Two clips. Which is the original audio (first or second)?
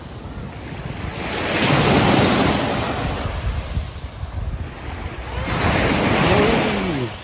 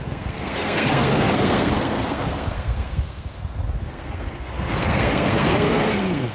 first